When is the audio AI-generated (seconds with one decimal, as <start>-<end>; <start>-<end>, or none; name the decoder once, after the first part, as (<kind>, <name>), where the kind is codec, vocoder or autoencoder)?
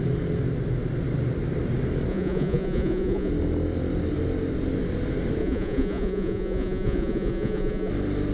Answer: 2.1-3.3 (vocoder, Vocos); 5.4-7.9